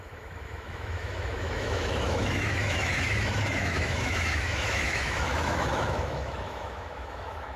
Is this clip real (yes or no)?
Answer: no